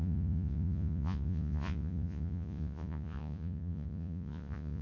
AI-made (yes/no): yes